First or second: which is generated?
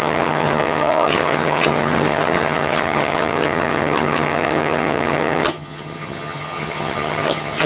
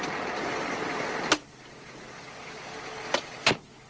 first